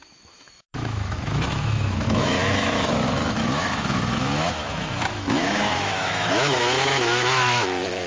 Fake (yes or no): yes